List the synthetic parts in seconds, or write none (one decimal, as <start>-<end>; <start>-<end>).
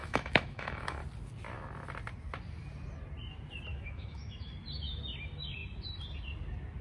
0.0-1.0; 3.7-4.5